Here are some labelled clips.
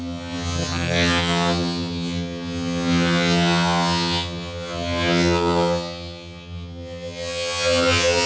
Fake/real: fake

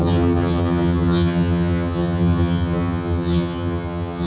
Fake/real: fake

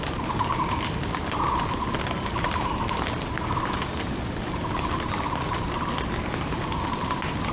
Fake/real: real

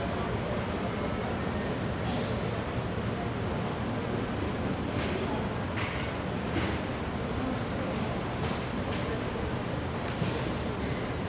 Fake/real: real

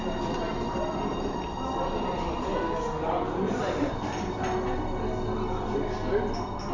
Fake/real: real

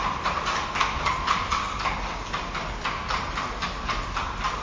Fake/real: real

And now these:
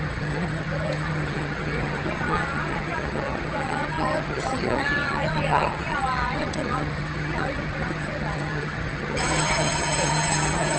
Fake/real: fake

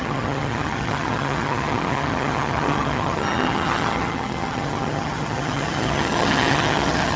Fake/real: fake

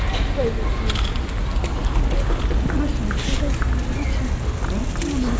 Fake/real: real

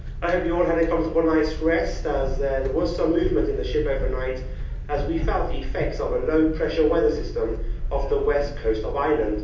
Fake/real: real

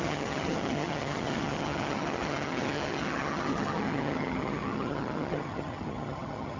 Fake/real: fake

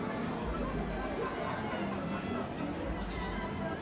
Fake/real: real